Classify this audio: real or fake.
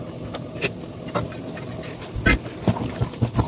real